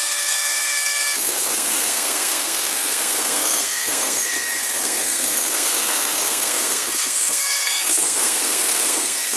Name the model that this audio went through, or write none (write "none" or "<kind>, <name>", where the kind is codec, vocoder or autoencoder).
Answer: codec, SNAC